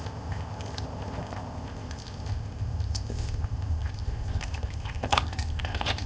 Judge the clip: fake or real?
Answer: fake